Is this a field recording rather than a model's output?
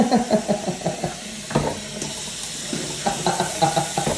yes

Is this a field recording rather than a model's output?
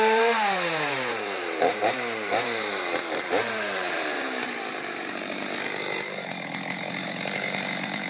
no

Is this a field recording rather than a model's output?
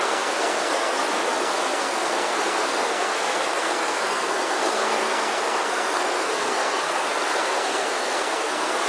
no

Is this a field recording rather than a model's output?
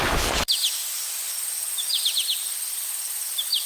no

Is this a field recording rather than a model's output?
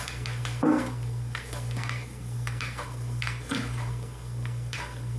no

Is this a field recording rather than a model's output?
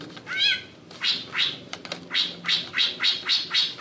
yes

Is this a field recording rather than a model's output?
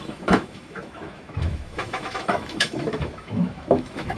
no